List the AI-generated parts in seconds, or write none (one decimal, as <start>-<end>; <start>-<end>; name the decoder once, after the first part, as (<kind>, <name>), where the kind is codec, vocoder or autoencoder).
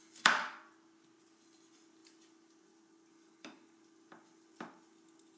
none